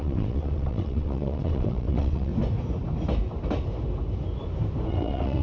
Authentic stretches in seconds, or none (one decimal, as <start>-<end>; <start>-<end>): 2.3-4.9